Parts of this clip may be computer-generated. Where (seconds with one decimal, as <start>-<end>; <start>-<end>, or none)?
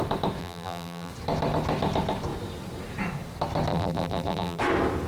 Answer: 0.4-1.1; 3.7-4.6